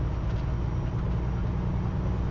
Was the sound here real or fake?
real